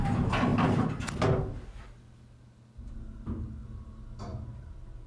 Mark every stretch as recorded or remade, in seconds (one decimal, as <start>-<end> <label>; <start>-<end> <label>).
0.0-5.1 recorded